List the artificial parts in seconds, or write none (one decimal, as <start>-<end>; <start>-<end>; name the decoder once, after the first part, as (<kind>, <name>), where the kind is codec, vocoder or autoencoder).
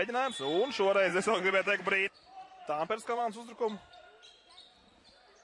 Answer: 1.1-1.8 (vocoder, BigVGAN v2); 2.5-3.7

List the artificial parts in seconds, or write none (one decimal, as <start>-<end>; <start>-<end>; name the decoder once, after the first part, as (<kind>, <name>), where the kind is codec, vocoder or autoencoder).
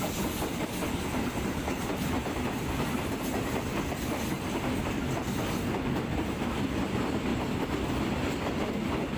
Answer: none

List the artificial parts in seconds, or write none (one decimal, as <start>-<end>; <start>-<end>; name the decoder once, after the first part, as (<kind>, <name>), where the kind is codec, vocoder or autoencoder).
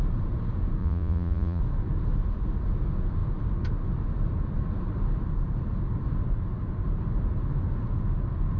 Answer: 0.8-1.6 (vocoder, Vocos)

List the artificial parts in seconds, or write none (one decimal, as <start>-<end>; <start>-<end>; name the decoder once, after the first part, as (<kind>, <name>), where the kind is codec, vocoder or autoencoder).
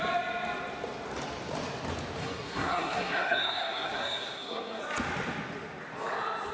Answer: 2.2-4.8 (codec, SNAC)